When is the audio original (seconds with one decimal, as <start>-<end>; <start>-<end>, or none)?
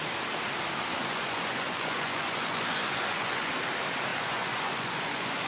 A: 0.0-1.0; 3.5-4.1